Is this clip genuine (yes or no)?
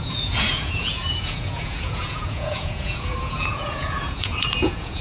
no